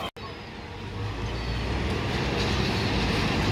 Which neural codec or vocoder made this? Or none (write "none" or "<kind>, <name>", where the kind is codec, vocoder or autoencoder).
none